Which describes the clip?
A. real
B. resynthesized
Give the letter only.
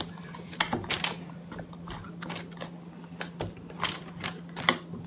A